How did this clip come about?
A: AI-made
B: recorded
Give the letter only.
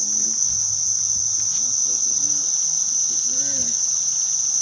B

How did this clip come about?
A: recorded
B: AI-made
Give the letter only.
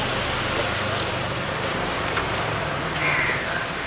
A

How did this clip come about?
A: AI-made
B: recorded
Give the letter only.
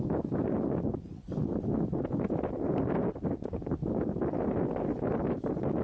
B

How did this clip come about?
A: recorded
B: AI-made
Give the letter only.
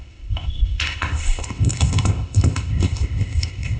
B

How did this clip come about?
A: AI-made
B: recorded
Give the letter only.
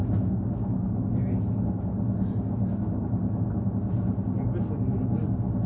B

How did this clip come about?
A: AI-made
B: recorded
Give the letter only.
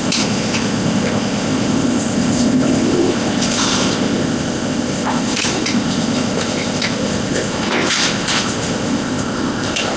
A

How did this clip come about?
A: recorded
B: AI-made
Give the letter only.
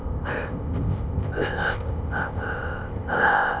B